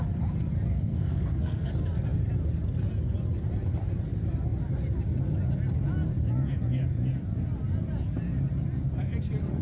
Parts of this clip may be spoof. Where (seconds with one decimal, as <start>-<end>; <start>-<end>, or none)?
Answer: 0.9-1.7